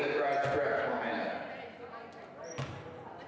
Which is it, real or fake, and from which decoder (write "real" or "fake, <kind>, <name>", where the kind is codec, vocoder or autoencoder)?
real